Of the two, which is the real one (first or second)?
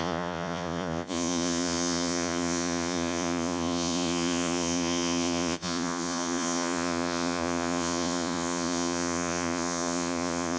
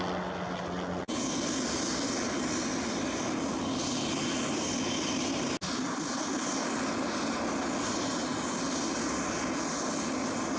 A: second